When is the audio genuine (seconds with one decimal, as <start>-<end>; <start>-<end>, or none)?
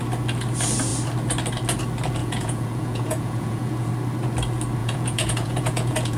0.0-2.2; 3.9-4.8